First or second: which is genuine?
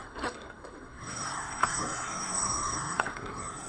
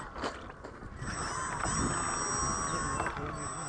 second